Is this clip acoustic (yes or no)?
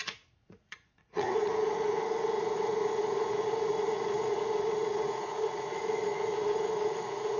no